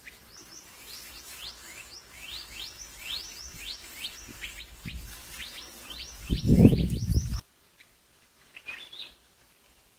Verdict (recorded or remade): remade